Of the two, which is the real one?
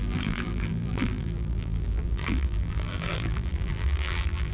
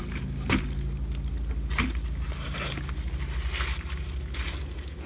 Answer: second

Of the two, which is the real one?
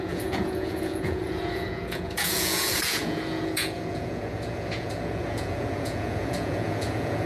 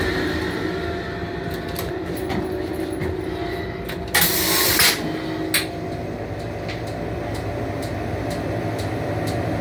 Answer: second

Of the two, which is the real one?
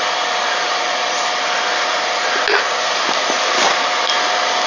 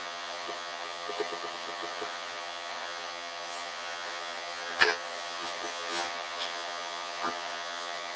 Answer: first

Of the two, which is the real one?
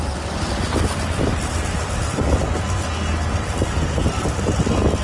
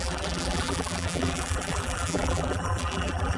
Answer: first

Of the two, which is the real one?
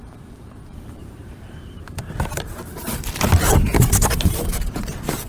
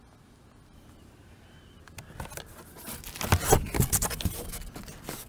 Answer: second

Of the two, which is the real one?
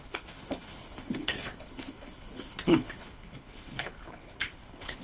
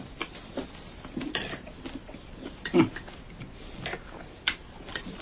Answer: second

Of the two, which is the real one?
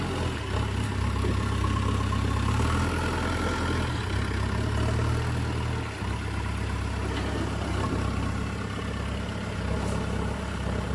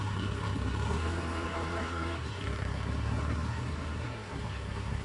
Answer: first